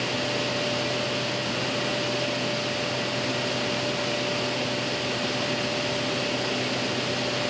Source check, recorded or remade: recorded